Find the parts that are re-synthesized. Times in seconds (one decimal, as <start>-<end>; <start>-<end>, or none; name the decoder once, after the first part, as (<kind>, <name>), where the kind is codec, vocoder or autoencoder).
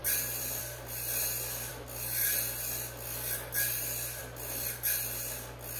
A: 0.0-0.6 (vocoder, BigVGAN v2)